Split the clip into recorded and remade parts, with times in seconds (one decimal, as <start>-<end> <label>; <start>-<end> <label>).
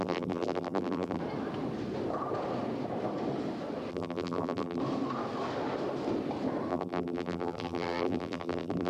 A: 0.0-1.2 remade; 1.2-3.9 recorded; 3.9-4.8 remade; 4.8-6.7 recorded; 6.7-8.9 remade